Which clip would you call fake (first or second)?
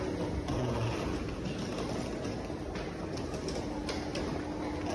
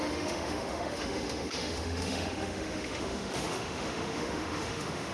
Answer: second